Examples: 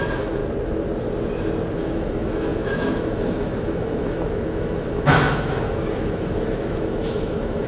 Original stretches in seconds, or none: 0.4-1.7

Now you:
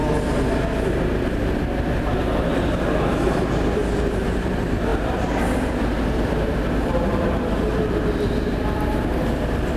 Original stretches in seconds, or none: 0.0-3.1; 3.8-4.4